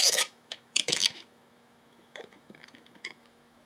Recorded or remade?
remade